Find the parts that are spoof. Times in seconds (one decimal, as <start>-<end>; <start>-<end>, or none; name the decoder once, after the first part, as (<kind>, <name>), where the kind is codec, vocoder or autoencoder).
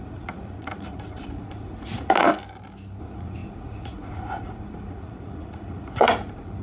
0.0-2.3 (vocoder, Vocos); 3.0-6.6